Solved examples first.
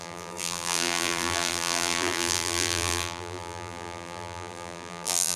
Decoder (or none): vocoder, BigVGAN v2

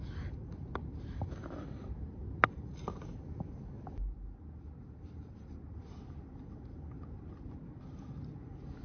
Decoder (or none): none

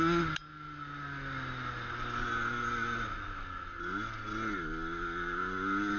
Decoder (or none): none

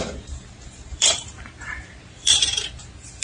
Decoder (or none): vocoder, BigVGAN v2